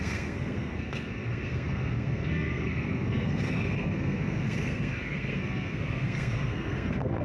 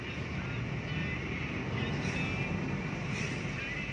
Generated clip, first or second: first